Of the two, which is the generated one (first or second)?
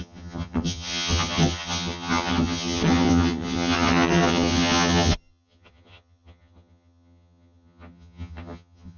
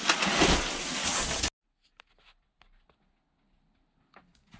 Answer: first